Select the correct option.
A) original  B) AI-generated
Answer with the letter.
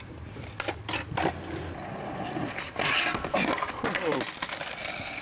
A